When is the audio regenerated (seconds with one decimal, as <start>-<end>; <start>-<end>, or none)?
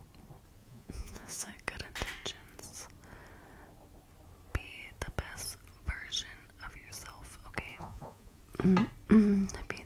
0.6-1.5; 7.7-8.4